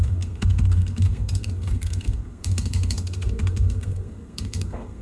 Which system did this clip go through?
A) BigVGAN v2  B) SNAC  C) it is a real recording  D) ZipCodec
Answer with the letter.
B